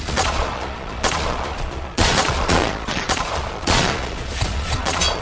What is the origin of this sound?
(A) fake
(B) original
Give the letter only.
A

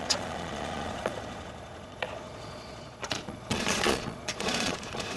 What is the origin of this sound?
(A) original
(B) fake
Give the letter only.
B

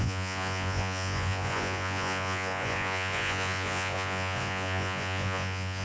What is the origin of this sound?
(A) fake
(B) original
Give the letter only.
A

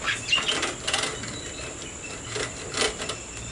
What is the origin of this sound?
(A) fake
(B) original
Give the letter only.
B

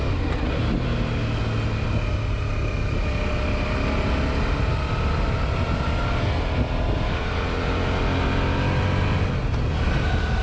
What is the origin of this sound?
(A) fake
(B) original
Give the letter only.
B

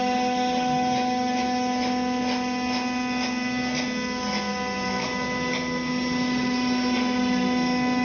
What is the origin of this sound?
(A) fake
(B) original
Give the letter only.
B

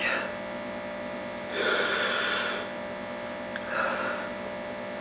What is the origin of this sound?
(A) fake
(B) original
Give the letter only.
B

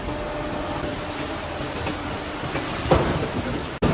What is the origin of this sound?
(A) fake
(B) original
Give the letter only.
B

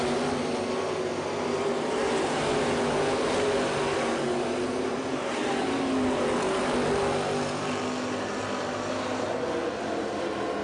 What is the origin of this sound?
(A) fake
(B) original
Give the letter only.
B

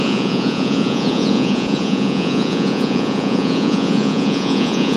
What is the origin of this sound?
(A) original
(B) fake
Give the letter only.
B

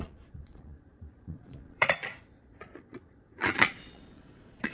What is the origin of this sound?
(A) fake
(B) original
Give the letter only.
A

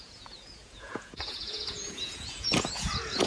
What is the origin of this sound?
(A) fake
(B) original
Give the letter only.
A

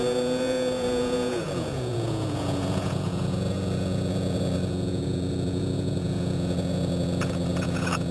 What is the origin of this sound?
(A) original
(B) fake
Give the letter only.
B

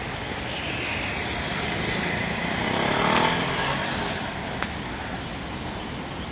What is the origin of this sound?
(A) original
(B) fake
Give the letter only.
A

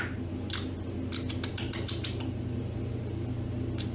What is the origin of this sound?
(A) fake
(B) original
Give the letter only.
B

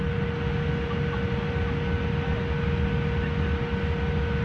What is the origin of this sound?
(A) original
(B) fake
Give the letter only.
A